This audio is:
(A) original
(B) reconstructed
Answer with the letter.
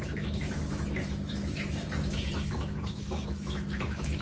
B